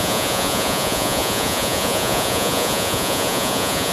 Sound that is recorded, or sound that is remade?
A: remade